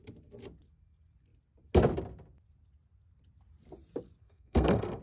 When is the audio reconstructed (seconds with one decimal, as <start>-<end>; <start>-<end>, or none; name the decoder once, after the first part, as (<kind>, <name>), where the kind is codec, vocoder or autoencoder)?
4.2-5.0 (codec, SNAC)